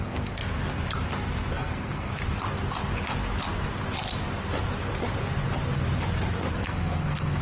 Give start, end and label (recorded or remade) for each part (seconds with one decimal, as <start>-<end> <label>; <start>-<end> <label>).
0.0-0.4 remade; 0.4-1.5 recorded; 1.5-2.1 remade; 2.1-6.5 recorded; 6.5-7.4 remade